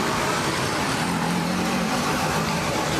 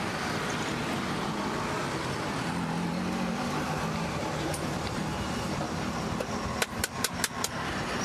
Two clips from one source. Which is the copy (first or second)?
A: first